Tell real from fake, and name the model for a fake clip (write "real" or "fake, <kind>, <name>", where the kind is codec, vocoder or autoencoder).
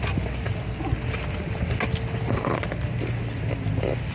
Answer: real